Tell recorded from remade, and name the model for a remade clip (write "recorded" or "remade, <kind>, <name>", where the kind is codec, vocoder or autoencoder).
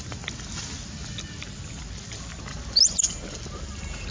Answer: recorded